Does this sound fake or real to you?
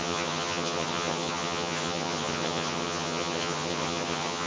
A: fake